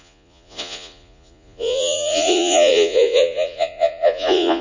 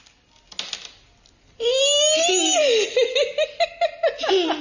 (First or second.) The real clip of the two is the second